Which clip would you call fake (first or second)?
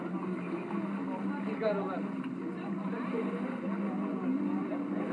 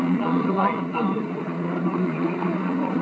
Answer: second